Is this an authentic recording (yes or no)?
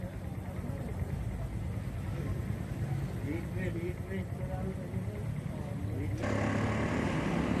yes